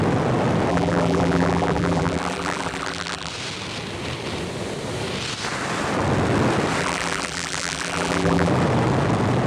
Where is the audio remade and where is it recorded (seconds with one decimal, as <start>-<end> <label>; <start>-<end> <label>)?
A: 0.0-0.7 recorded; 0.7-3.3 remade; 3.3-6.8 recorded; 6.8-8.5 remade; 8.5-9.5 recorded